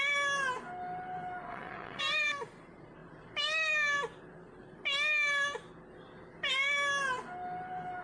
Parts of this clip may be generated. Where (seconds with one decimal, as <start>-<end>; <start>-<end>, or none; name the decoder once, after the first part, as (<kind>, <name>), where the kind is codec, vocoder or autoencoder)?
1.5-2.0 (vocoder, WaveNeXt)